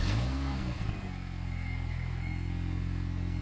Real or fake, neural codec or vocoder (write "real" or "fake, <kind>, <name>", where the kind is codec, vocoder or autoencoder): fake, codec, SNAC